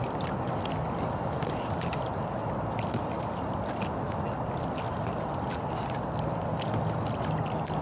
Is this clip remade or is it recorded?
recorded